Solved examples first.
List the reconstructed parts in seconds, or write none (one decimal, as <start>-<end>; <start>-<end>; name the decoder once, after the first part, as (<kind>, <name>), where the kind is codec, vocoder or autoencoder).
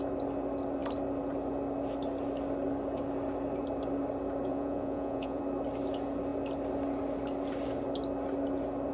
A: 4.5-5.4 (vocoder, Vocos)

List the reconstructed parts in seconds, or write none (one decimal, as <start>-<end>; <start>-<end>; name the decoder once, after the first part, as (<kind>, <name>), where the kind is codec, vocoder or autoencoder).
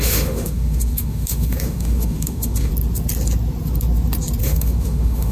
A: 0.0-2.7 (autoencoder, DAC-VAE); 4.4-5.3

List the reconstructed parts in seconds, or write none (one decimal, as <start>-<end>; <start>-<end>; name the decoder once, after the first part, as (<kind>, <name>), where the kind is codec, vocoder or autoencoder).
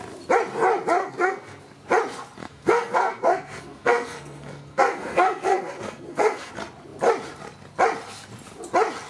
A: 1.0-1.6 (codec, SNAC); 2.4-6.5